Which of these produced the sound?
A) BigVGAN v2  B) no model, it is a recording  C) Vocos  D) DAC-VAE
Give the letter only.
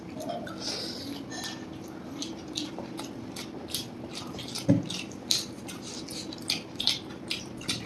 B